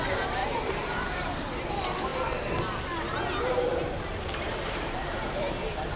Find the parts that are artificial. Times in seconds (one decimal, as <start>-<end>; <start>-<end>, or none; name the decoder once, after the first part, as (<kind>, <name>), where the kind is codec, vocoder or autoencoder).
0.4-1.7 (vocoder, BigVGAN v2); 3.7-5.6